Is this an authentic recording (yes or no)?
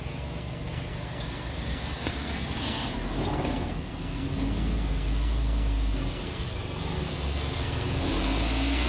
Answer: no